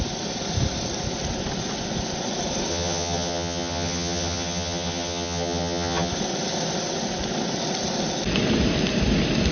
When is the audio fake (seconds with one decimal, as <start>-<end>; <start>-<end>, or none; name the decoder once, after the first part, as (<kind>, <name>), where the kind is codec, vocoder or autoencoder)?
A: 2.7-6.1 (vocoder, HiFi-GAN)

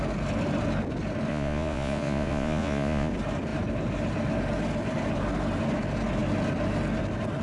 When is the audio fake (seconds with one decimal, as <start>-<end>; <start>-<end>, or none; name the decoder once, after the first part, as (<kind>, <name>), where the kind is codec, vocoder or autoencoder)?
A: 1.3-3.1 (vocoder, Vocos)

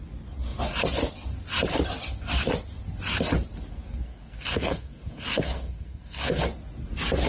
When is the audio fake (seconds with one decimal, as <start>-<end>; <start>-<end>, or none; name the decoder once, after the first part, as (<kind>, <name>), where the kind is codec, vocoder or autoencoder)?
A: 3.7-6.4 (codec, SNAC)